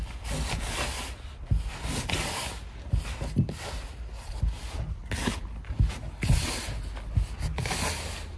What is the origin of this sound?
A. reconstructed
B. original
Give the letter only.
B